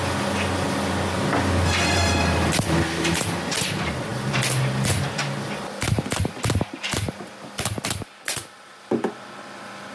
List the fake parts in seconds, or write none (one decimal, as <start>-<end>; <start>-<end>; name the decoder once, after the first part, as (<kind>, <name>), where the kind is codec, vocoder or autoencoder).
none